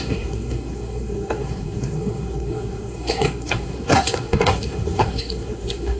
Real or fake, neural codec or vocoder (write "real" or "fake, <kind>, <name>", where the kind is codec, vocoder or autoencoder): fake, codec, SNAC